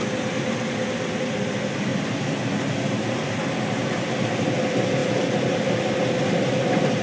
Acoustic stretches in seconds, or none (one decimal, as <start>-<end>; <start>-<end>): 0.0-7.0